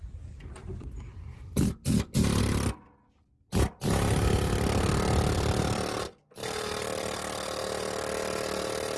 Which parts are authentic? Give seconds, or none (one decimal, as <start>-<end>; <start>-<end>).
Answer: 0.0-6.4; 7.6-9.0